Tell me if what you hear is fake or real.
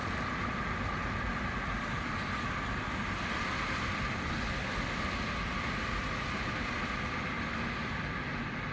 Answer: real